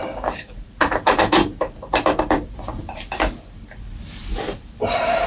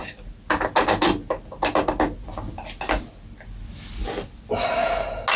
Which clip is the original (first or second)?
second